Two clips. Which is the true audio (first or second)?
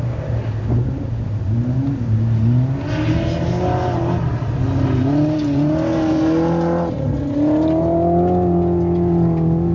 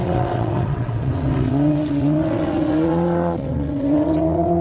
first